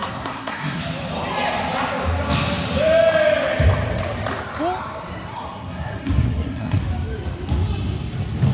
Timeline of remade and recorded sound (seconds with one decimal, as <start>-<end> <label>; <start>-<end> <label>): 0.0-0.8 remade; 0.8-5.3 recorded; 5.3-6.8 remade; 6.8-8.5 recorded